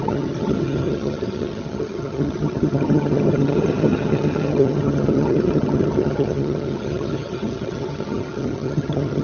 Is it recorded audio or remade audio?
remade